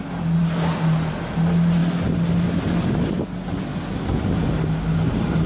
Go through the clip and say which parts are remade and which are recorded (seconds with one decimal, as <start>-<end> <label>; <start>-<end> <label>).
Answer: 0.0-5.5 recorded